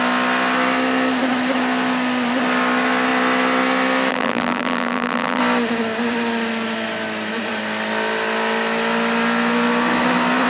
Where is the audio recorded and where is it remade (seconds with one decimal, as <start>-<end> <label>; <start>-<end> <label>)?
0.0-4.1 recorded; 4.1-5.4 remade; 5.4-10.5 recorded